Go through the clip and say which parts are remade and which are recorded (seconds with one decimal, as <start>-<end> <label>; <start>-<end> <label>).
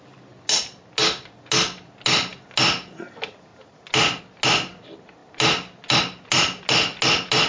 0.0-7.5 recorded